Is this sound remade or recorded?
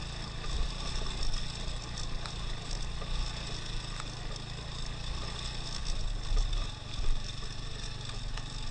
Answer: recorded